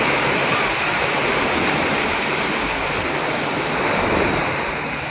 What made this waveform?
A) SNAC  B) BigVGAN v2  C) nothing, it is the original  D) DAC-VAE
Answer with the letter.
B